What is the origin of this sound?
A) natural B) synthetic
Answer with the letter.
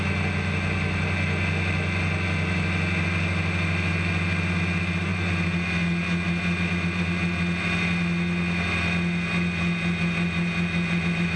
A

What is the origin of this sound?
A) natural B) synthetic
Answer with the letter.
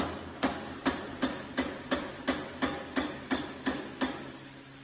A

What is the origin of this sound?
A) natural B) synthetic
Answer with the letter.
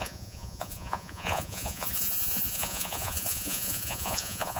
B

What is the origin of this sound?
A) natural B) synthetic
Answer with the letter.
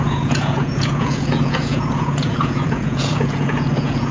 B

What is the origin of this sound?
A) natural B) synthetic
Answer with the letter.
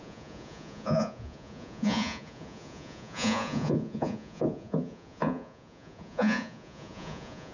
B